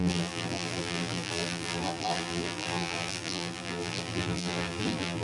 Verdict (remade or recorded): remade